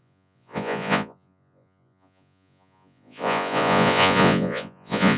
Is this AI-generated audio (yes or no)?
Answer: yes